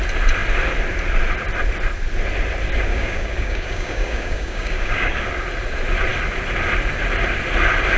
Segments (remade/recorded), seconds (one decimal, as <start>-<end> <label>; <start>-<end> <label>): 0.0-2.9 recorded; 2.9-5.3 remade; 5.3-8.0 recorded